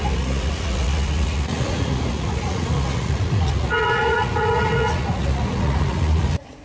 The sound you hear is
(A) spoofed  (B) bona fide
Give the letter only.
A